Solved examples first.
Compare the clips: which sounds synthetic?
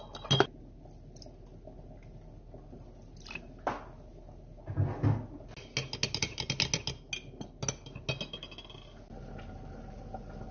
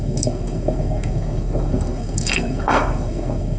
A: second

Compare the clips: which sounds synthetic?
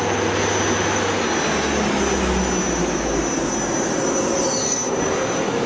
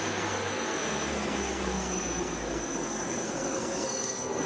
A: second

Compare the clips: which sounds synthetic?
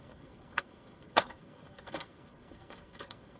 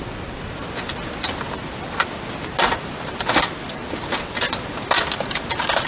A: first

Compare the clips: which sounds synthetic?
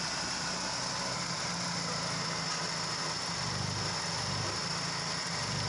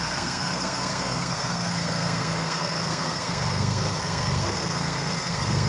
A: second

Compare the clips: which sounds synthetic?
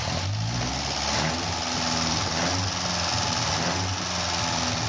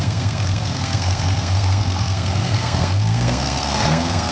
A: second